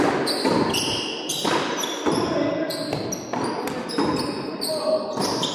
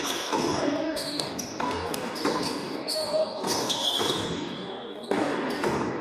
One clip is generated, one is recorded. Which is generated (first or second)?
second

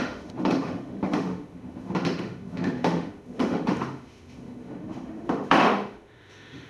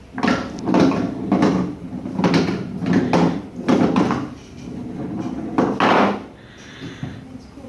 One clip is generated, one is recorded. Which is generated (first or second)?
first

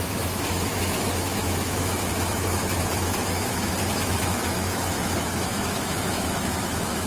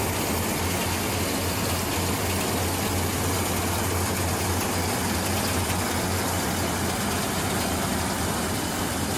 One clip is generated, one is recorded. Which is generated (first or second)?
first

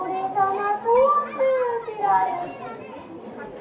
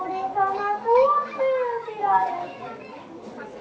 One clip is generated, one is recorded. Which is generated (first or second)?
second